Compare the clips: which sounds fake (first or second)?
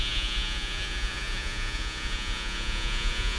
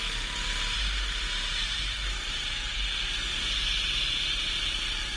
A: first